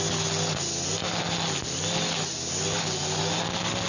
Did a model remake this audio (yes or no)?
no